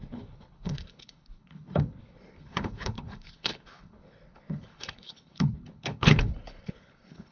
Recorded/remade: remade